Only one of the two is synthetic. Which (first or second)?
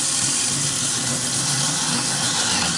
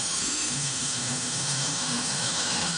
second